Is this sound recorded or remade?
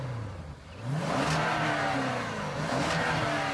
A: recorded